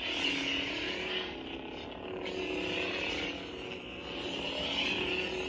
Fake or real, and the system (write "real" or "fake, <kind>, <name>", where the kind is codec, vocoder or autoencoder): real